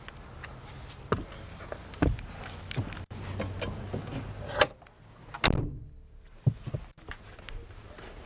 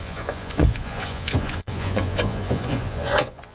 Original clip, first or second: first